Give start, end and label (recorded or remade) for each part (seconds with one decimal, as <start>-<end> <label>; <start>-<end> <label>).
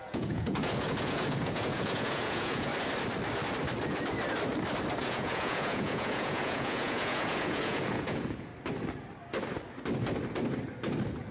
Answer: 0.0-2.7 remade; 2.7-5.0 recorded; 5.0-8.5 remade; 8.5-11.3 recorded